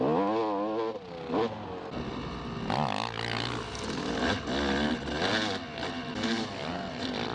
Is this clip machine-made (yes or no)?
no